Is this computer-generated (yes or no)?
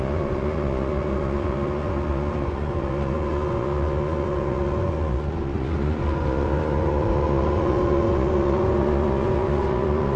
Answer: yes